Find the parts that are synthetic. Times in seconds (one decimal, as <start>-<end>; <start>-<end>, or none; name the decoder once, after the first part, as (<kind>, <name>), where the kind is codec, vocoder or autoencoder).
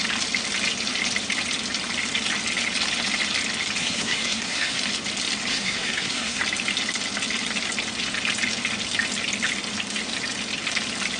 3.8-4.8 (codec, SNAC); 5.5-6.4